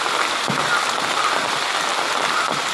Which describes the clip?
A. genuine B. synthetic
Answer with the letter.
B